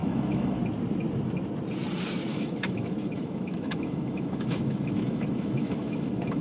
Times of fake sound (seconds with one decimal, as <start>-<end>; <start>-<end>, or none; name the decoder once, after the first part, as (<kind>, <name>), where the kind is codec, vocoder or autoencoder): 0.0-0.6 (autoencoder, DAC-VAE); 2.3-6.4